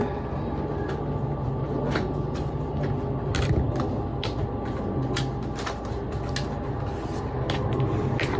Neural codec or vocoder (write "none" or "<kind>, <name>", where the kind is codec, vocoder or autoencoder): none